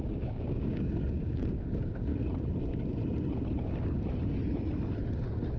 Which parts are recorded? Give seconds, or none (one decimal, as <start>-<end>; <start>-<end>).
2.1-5.6

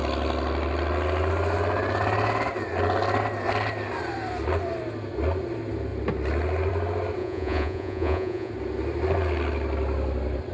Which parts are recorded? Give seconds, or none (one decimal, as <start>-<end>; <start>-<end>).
0.0-7.2; 8.5-10.5

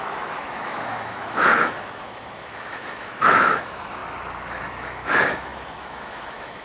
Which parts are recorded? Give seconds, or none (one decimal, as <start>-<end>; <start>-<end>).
4.0-4.6